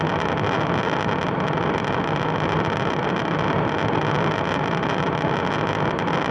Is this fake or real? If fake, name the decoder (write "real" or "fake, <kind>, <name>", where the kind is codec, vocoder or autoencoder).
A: real